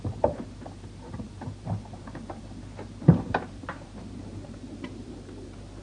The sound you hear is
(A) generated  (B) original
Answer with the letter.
A